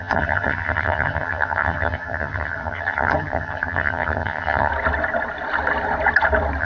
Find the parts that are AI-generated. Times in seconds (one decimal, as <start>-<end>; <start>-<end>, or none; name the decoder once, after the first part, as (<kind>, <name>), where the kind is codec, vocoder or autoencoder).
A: 0.0-4.7 (vocoder, HiFi-GAN)